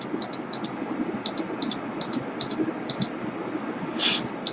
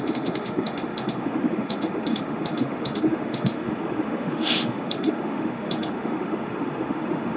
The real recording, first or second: first